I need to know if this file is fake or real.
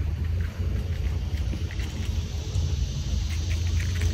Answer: fake